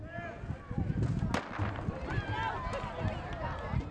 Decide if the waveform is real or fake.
real